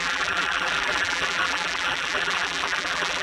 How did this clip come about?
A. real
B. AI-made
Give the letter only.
B